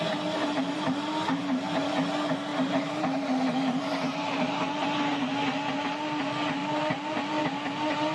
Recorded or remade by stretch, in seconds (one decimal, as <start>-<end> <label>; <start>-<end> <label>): 0.0-0.4 recorded; 0.4-1.9 remade; 1.9-2.5 recorded; 2.5-5.2 remade; 5.2-6.6 recorded; 6.6-7.4 remade; 7.4-8.1 recorded